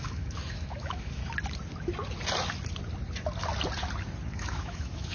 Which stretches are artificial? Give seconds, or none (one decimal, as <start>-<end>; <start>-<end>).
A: 0.0-1.2; 4.3-5.1